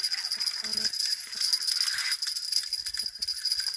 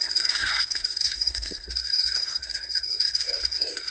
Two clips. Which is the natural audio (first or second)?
first